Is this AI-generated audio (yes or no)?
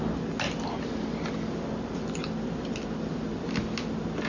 no